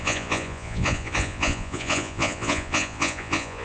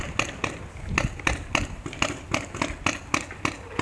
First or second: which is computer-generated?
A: first